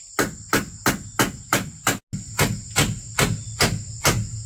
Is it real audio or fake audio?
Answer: real